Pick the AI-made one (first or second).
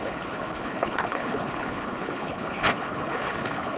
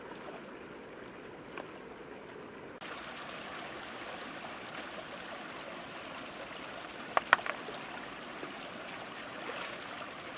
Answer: first